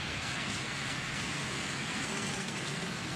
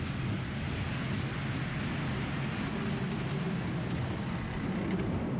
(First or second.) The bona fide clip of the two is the second